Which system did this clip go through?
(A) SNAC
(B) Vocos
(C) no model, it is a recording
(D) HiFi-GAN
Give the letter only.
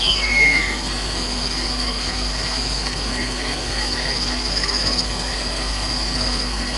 A